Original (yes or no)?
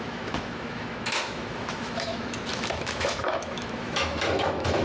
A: no